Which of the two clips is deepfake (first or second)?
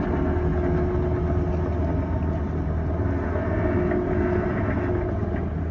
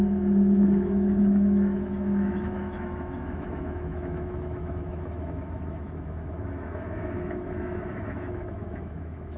second